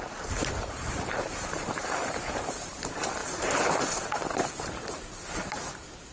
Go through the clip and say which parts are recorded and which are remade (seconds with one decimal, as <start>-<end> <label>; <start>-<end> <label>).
0.0-6.1 remade